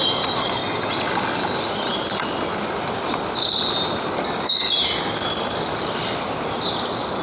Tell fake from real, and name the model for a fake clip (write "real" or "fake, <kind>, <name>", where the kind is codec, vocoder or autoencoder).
real